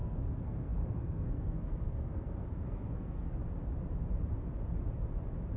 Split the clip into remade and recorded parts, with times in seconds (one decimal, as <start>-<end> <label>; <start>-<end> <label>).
0.0-3.4 remade; 3.4-5.6 recorded